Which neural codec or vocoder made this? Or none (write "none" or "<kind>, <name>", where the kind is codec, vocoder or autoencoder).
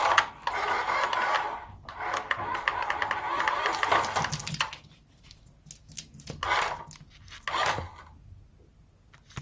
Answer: none